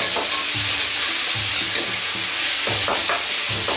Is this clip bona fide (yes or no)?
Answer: yes